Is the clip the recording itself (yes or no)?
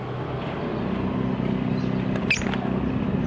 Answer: yes